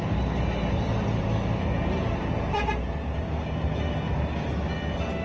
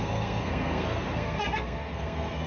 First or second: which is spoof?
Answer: second